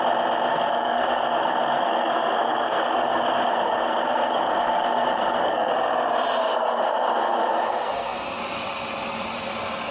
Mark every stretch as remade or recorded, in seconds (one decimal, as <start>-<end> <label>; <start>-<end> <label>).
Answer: 0.0-0.5 recorded; 0.5-5.7 remade; 5.7-6.4 recorded; 6.4-8.4 remade; 8.4-9.9 recorded